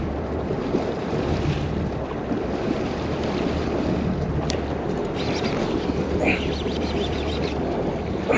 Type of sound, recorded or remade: recorded